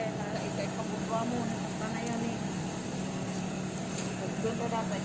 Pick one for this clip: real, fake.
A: real